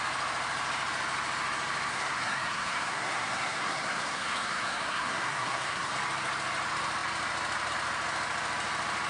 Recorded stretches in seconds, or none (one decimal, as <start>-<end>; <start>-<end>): 0.0-1.9; 5.9-9.1